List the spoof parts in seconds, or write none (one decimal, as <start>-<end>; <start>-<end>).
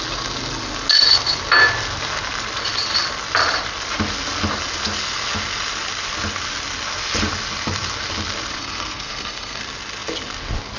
8.6-9.6